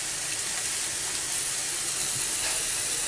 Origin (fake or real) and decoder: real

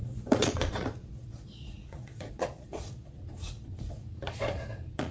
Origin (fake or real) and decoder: fake, vocoder, Vocos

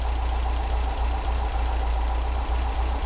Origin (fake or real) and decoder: real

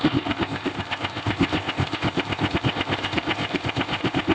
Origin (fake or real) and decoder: fake, codec, ZipCodec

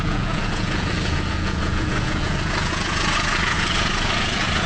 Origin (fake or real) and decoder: fake, vocoder, Vocos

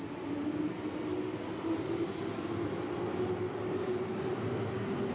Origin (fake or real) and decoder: real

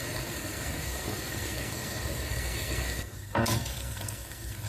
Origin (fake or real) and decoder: fake, codec, SNAC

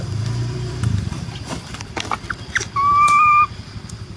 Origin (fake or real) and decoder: fake, vocoder, BigVGAN v2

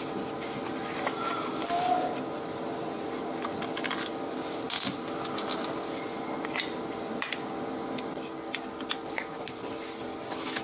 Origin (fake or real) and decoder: real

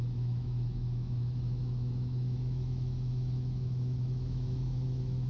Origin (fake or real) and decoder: fake, autoencoder, DAC-VAE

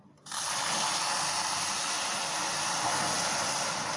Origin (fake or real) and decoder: real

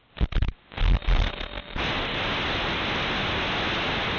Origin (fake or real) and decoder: real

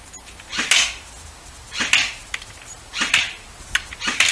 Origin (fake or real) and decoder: real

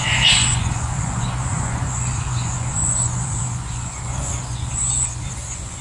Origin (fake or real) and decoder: fake, vocoder, Vocos